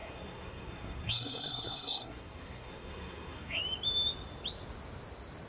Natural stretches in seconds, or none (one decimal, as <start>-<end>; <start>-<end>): 3.6-5.5